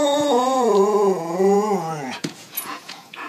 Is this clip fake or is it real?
fake